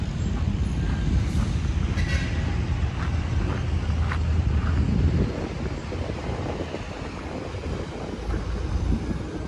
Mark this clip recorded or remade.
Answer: recorded